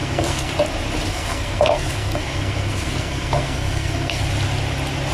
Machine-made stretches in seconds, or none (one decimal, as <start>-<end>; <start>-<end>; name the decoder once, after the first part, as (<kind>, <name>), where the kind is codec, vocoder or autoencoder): 0.0-0.5 (codec, SNAC); 1.1-4.2